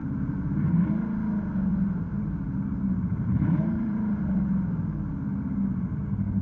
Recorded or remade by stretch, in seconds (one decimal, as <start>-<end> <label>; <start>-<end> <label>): 0.0-0.8 remade; 0.8-1.7 recorded; 1.7-4.2 remade; 4.2-6.4 recorded